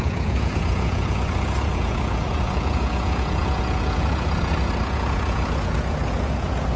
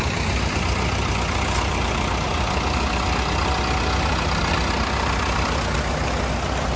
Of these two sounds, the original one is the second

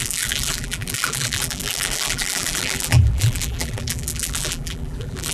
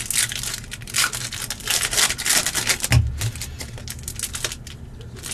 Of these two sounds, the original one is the second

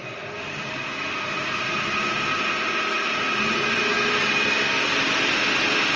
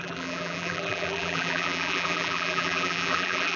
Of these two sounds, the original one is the first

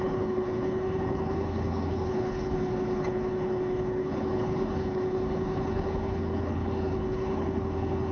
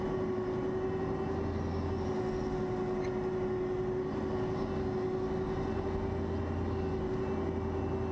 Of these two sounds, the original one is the second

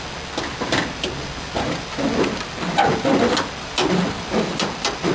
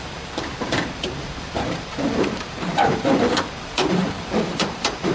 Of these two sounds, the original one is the first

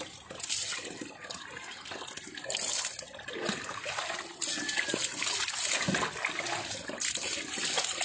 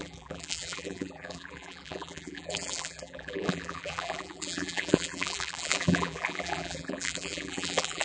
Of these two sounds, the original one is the first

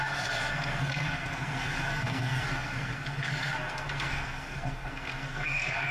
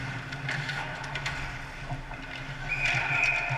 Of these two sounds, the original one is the second